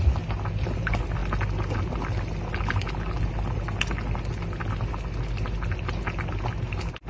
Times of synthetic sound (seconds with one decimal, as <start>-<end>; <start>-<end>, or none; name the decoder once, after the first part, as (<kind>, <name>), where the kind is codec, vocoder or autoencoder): none